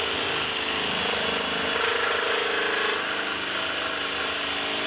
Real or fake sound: real